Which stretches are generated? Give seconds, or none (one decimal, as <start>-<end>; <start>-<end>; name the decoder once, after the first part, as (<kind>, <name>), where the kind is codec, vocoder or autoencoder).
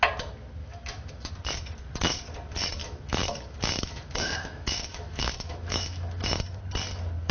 0.6-1.3 (autoencoder, DAC-VAE); 2.8-6.6